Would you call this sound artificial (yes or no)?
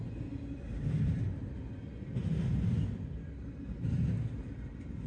no